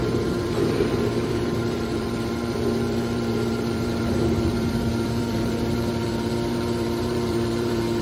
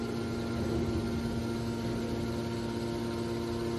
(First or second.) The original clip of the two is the second